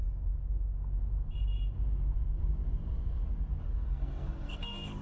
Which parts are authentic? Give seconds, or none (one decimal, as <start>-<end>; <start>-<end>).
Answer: 0.0-3.8